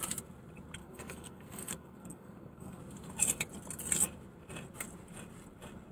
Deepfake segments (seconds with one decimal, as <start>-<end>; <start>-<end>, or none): 0.8-2.8